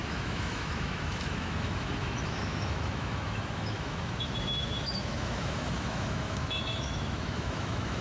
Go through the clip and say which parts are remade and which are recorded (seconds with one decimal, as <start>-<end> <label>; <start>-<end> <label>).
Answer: 0.0-8.0 remade